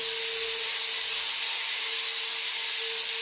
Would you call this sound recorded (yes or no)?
yes